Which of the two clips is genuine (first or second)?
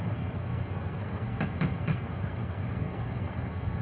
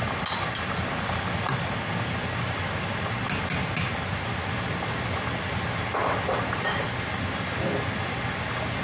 second